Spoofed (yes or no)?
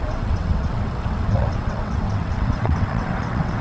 yes